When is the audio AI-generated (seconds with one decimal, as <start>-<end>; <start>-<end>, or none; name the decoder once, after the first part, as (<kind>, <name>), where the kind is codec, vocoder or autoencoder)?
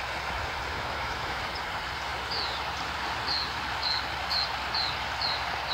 0.7-1.4 (autoencoder, DAC-VAE)